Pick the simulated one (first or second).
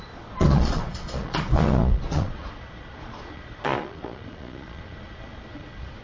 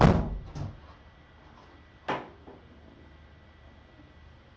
first